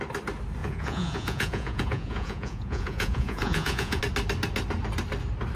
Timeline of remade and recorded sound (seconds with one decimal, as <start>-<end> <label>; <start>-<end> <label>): 0.0-0.6 recorded; 0.6-4.0 remade; 4.0-5.6 recorded